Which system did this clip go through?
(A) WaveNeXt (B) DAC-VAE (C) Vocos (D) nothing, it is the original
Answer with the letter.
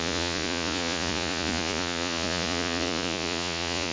C